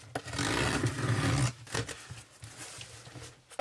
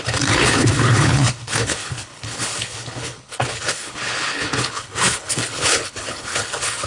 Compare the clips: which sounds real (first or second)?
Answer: first